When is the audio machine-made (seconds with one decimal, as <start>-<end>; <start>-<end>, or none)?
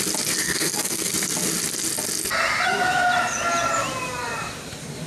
0.4-1.1